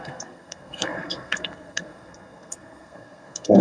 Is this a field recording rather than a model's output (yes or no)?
no